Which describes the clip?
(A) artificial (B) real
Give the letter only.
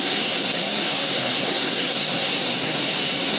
A